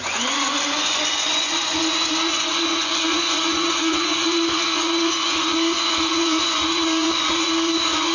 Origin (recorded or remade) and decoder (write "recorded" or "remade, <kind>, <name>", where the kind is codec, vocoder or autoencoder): remade, vocoder, Vocos